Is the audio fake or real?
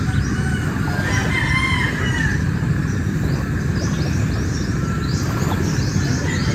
real